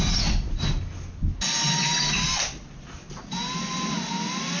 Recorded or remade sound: recorded